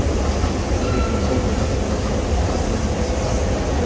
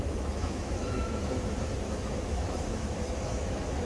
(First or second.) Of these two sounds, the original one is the first